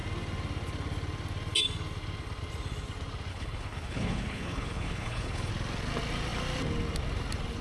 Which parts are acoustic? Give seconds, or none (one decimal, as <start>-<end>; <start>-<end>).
0.0-3.3; 5.5-7.6